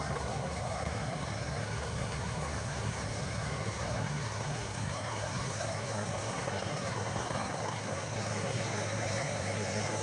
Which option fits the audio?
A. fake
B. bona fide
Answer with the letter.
A